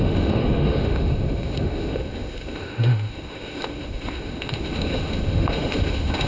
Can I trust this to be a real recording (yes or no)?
no